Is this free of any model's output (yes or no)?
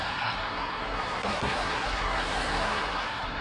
no